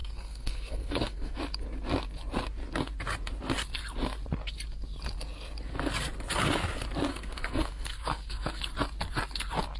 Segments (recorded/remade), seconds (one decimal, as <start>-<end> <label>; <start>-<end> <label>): 0.0-1.4 remade; 1.4-7.1 recorded; 7.1-8.6 remade; 8.6-9.8 recorded